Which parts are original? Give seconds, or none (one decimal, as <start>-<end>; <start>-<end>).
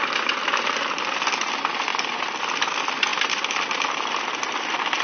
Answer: 0.0-5.0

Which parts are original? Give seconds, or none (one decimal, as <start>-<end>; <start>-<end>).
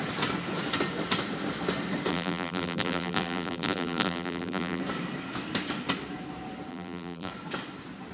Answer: 0.0-2.1; 4.8-6.7; 7.3-8.1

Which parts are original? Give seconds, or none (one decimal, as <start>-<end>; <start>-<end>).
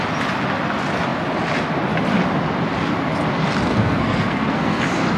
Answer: 0.0-3.7; 4.8-5.2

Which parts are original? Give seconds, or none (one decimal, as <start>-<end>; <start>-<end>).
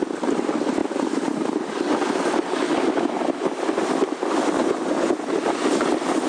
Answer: 0.0-6.3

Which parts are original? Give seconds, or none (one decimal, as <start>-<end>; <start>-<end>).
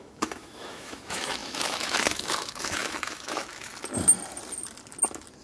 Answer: 3.7-5.4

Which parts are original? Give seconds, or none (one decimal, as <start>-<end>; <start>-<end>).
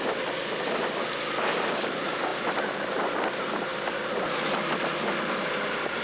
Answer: 0.0-6.0